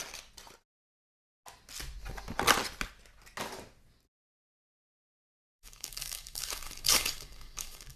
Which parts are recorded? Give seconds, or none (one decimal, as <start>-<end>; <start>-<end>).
0.0-5.2